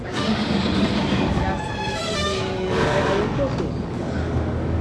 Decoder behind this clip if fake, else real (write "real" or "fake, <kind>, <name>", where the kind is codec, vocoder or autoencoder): fake, codec, DAC